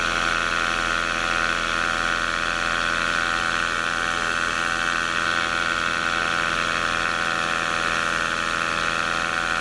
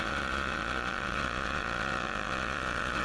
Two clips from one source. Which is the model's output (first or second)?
second